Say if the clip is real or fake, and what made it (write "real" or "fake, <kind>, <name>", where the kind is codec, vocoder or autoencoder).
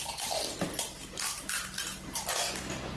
real